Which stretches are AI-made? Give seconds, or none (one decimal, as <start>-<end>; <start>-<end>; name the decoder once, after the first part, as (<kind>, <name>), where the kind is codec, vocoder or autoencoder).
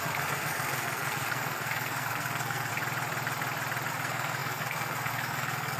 0.0-2.7 (codec, SNAC); 3.9-5.8